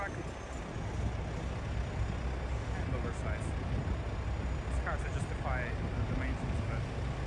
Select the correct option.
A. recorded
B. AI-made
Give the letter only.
A